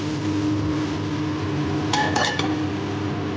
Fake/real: real